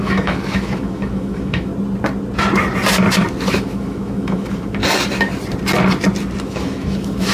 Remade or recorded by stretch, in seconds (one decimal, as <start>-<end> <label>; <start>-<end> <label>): 0.0-1.7 remade; 1.7-3.5 recorded; 3.5-4.8 remade; 4.8-6.4 recorded; 6.4-7.3 remade